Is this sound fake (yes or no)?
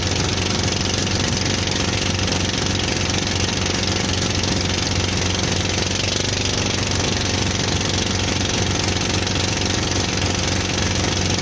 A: no